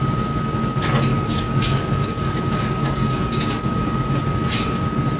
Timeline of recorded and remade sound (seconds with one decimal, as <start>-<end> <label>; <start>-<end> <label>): 0.0-1.1 recorded; 1.1-4.2 remade; 4.2-5.2 recorded